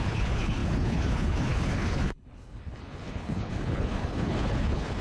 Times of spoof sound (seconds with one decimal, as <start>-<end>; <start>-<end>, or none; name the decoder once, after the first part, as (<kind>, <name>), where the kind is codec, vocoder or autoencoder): 0.0-5.0 (codec, HILCodec)